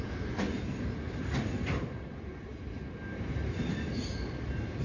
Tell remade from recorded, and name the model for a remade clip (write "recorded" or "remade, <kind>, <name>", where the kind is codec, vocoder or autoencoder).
recorded